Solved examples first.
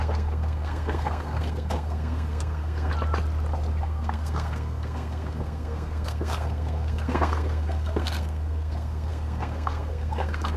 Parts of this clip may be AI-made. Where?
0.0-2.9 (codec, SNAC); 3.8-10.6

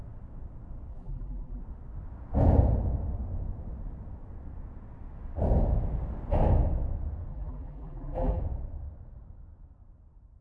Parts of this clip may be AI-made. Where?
0.9-1.6 (vocoder, BigVGAN v2); 7.3-8.4

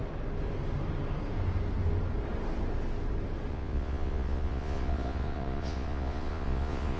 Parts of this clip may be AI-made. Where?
3.5-7.0 (vocoder, Vocos)

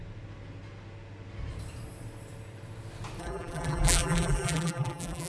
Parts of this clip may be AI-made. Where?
3.2-5.3 (vocoder, BigVGAN v2)